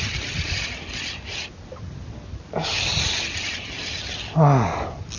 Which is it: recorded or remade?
recorded